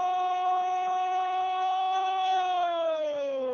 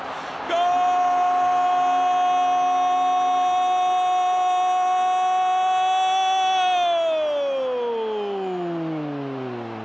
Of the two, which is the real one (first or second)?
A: second